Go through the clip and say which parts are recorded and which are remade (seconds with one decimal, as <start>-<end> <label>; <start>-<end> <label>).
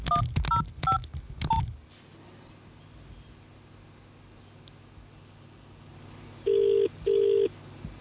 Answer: 0.0-8.0 recorded